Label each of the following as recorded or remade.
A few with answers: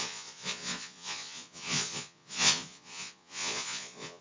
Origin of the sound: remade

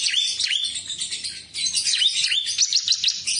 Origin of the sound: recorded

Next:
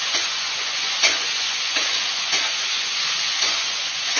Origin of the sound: remade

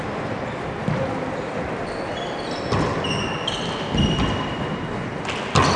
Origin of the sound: recorded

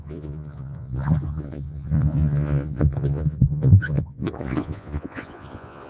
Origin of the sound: remade